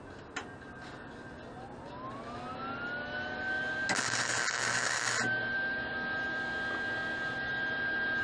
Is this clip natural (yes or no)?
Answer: yes